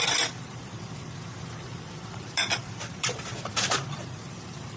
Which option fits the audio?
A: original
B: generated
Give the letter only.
B